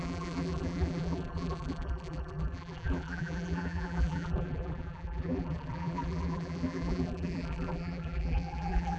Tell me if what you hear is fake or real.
fake